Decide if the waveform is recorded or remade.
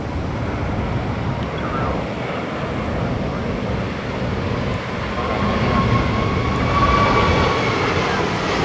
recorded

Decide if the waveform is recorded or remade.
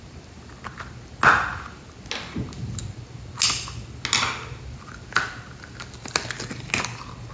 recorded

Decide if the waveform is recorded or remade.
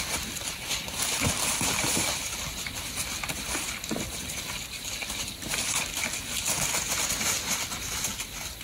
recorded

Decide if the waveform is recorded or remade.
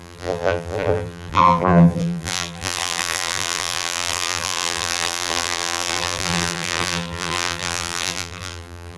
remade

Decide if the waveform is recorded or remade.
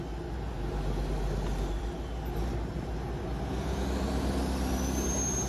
recorded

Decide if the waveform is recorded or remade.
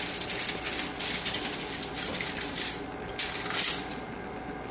recorded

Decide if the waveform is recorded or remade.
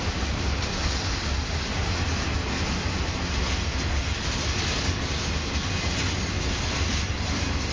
recorded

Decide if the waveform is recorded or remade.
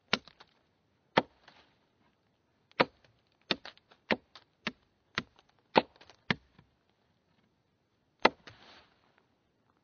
recorded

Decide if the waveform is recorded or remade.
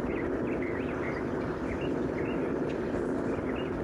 recorded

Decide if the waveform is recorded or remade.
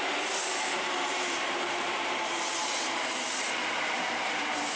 remade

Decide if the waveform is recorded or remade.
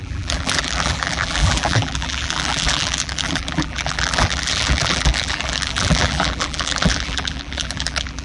remade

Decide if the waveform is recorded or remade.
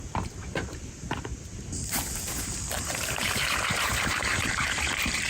remade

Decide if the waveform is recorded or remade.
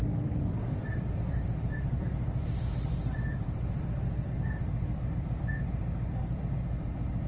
remade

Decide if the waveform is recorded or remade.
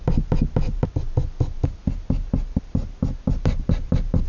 recorded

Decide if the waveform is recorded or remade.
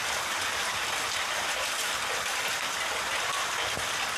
recorded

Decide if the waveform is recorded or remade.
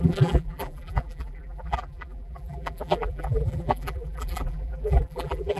remade